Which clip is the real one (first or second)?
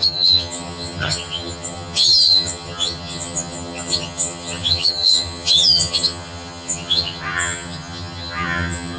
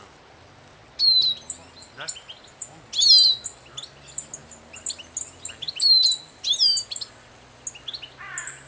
second